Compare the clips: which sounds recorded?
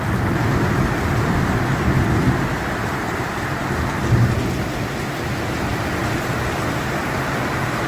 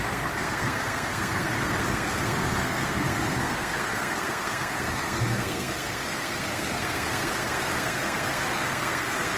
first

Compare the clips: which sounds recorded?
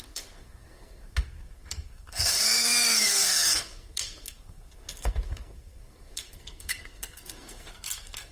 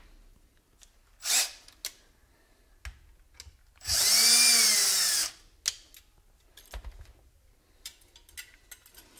second